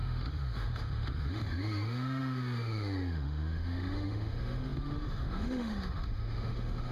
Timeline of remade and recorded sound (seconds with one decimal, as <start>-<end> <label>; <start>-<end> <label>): 0.0-6.9 remade